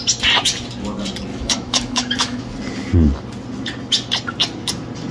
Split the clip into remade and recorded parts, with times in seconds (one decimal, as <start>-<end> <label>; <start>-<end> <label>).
0.0-1.3 recorded; 1.3-2.4 remade; 2.4-5.1 recorded